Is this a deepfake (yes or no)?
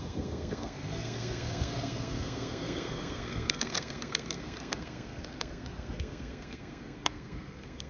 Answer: yes